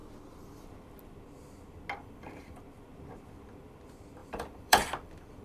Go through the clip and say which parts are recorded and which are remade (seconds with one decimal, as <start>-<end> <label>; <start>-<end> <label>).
0.0-2.0 recorded; 2.0-2.6 remade; 2.6-4.2 recorded; 4.2-5.4 remade